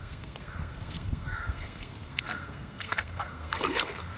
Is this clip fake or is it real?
fake